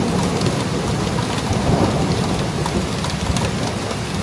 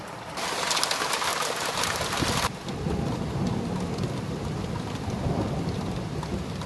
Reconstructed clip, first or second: second